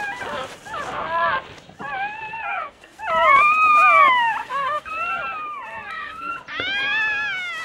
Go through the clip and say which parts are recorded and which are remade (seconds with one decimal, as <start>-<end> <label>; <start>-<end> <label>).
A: 0.0-2.5 recorded; 2.5-3.0 remade; 3.0-4.4 recorded; 4.4-4.9 remade; 4.9-5.7 recorded; 5.7-6.3 remade; 6.3-7.6 recorded